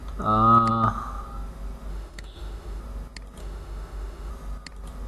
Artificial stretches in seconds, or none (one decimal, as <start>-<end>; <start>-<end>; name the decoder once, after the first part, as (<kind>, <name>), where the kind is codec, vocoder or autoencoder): 1.9-2.8 (autoencoder, DAC-VAE); 3.4-4.3